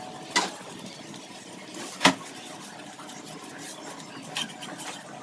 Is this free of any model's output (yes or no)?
yes